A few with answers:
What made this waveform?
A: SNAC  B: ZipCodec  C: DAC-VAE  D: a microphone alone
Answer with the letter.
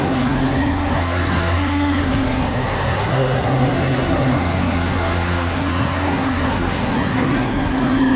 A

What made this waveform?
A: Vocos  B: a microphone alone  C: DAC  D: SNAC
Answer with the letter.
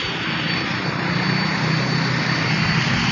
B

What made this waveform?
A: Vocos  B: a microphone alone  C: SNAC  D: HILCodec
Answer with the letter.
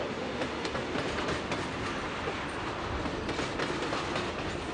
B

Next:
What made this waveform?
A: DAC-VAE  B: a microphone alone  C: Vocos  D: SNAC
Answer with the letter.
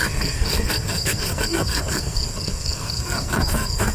D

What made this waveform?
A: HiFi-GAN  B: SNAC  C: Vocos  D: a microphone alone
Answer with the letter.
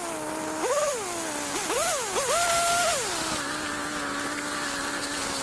D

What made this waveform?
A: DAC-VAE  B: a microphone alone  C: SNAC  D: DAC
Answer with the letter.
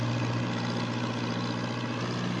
B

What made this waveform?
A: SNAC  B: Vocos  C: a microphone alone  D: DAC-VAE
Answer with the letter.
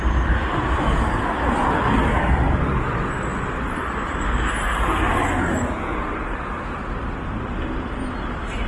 C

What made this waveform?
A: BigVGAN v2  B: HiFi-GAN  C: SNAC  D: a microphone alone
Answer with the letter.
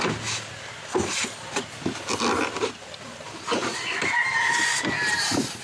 D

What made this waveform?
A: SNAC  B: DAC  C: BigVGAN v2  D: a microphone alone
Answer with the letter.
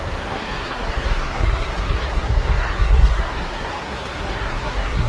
A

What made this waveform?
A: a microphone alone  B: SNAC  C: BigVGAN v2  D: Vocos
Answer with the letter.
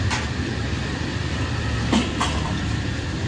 A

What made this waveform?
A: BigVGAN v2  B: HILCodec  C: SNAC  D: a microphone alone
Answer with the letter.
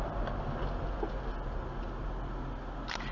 D